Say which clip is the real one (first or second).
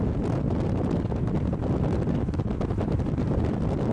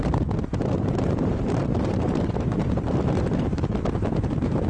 first